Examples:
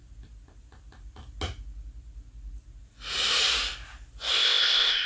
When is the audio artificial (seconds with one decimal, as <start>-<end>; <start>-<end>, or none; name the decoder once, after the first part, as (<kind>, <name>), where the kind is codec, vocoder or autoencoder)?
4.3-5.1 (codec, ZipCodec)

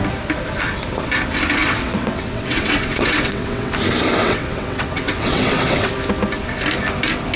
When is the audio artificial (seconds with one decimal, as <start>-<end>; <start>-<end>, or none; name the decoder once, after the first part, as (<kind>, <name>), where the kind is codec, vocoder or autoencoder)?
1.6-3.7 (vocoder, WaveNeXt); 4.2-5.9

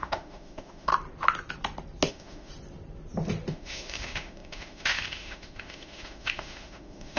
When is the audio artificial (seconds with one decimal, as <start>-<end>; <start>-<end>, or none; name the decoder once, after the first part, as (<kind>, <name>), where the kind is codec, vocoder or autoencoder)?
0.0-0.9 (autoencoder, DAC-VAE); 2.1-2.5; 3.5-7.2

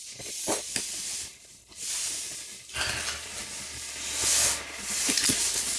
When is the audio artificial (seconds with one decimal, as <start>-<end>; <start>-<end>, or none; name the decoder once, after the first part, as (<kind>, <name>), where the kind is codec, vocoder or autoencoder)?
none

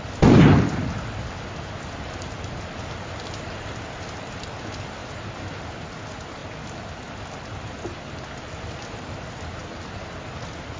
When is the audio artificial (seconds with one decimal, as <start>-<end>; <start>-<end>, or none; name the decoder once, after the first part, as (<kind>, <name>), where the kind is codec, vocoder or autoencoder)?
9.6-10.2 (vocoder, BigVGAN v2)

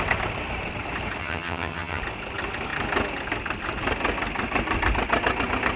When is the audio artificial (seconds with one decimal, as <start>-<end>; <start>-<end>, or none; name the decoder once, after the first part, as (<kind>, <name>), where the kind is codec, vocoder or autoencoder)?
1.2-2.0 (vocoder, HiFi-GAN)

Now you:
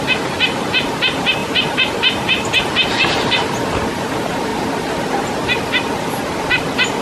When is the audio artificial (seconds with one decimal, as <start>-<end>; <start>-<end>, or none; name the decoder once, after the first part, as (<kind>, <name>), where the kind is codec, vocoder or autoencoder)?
0.0-7.0 (vocoder, BigVGAN v2)

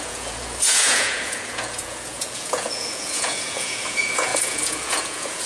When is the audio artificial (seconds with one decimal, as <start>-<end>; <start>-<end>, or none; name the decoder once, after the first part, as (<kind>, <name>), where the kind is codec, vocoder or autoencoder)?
0.0-5.5 (vocoder, Vocos)